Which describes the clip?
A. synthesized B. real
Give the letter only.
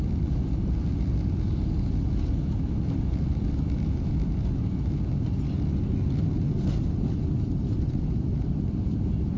B